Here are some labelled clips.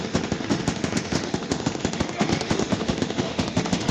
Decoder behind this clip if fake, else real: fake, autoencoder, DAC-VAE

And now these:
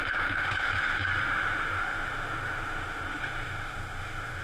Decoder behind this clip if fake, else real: fake, autoencoder, DAC-VAE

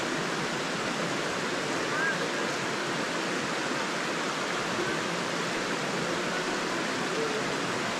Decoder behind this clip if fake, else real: real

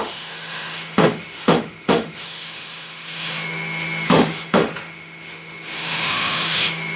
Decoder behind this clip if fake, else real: fake, autoencoder, DAC-VAE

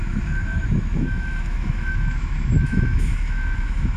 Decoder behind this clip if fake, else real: fake, autoencoder, DAC-VAE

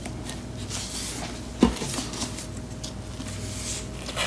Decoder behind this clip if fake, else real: real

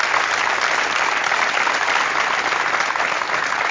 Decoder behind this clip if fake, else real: real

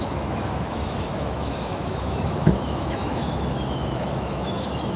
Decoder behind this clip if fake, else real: fake, autoencoder, DAC-VAE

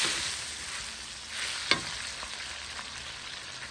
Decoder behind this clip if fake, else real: real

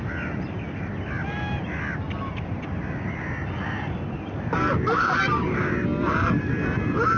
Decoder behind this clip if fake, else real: real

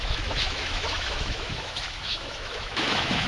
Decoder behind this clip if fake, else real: fake, autoencoder, DAC-VAE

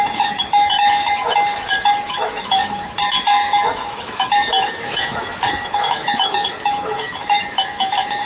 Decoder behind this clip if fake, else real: fake, autoencoder, DAC-VAE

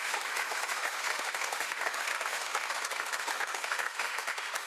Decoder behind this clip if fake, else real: fake, autoencoder, DAC-VAE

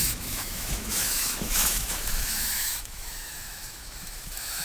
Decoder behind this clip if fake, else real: fake, autoencoder, DAC-VAE